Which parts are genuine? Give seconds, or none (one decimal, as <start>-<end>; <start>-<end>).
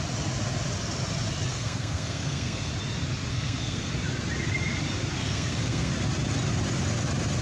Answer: 0.0-1.5; 2.7-3.3; 3.9-5.2; 5.9-7.4